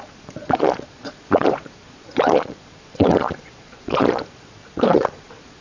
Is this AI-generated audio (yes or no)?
yes